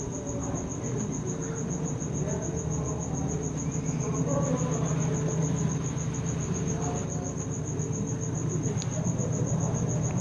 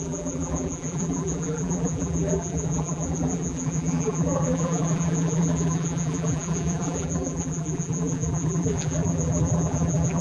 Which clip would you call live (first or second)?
first